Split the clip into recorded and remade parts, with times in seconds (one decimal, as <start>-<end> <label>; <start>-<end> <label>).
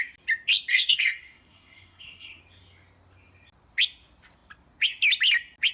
0.0-0.7 recorded; 0.7-2.4 remade; 2.4-5.7 recorded